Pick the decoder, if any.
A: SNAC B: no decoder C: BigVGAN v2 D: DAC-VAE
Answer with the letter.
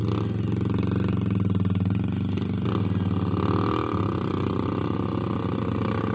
B